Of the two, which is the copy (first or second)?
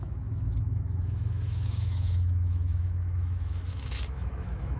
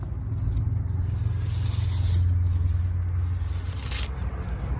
first